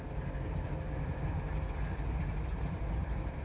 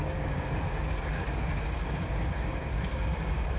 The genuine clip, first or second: first